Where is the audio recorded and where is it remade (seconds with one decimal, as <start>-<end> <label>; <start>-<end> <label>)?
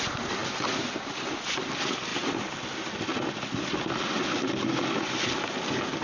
0.0-2.1 recorded; 2.1-3.6 remade; 3.6-6.0 recorded